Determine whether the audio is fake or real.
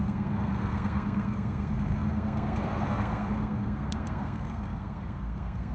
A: fake